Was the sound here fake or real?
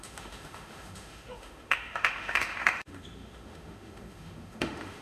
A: fake